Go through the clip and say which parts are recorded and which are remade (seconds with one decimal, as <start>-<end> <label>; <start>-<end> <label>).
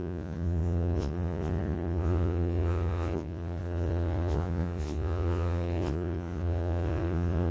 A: 0.0-7.5 remade